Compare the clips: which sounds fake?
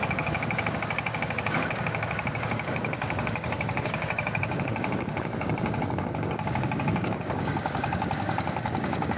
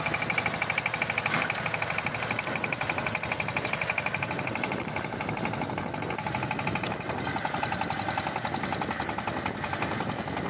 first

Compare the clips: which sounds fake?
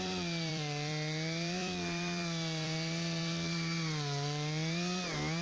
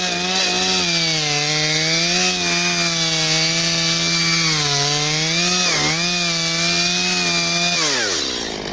first